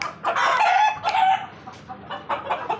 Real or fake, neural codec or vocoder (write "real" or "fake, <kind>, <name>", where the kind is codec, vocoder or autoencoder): real